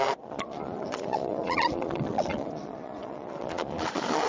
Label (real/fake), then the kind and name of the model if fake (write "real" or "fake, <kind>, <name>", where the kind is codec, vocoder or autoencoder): fake, vocoder, Vocos